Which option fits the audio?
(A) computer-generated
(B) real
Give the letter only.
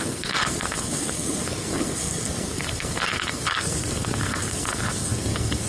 A